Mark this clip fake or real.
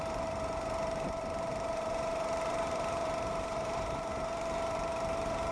fake